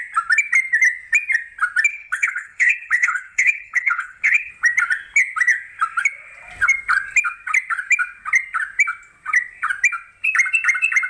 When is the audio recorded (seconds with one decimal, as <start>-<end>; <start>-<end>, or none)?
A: 0.0-1.9; 4.5-11.1